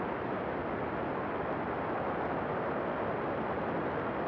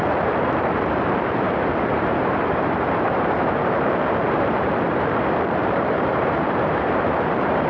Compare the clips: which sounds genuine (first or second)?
first